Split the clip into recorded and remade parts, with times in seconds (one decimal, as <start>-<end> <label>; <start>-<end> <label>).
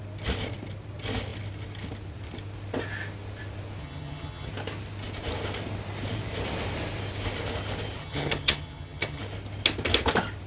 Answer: 0.0-3.8 recorded; 3.8-4.5 remade; 4.5-8.0 recorded; 8.0-9.2 remade; 9.2-10.5 recorded